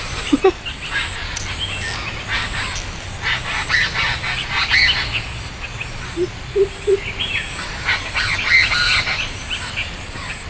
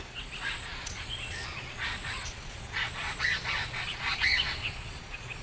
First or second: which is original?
first